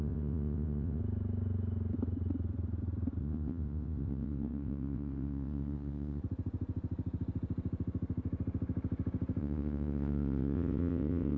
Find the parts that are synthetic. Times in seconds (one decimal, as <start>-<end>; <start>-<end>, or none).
0.0-1.0; 3.2-6.2; 9.4-11.4